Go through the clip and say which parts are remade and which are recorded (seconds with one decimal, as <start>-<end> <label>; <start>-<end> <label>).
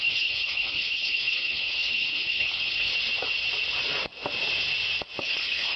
0.0-2.9 remade; 2.9-5.2 recorded; 5.2-5.8 remade